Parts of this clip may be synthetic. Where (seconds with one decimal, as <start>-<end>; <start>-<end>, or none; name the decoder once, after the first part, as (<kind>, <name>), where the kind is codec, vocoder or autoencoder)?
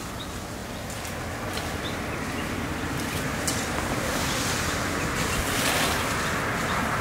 none